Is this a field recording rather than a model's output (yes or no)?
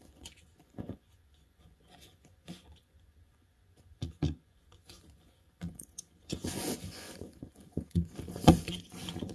no